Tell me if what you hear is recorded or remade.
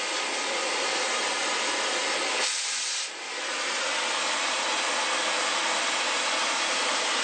recorded